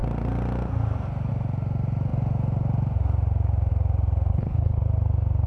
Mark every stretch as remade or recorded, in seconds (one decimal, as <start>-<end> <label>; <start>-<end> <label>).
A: 0.0-4.3 recorded; 4.3-4.8 remade; 4.8-5.5 recorded